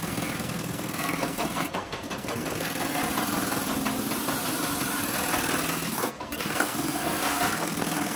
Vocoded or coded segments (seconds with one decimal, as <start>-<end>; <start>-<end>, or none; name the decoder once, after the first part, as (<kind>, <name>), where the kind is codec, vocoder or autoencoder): 0.0-3.0 (codec, SNAC); 5.7-8.2